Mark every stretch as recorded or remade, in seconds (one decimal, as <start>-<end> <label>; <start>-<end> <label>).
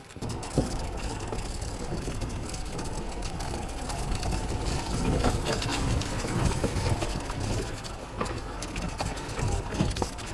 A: 0.0-10.3 remade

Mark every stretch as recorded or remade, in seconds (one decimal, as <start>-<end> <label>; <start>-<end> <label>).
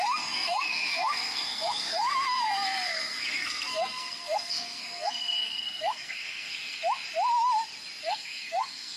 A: 0.0-6.8 remade; 6.8-8.0 recorded; 8.0-9.0 remade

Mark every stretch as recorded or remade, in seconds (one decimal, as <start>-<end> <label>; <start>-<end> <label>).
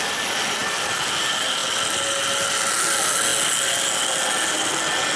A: 0.0-5.2 recorded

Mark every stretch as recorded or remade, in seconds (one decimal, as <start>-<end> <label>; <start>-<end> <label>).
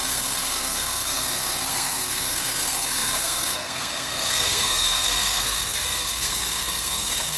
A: 0.0-7.4 remade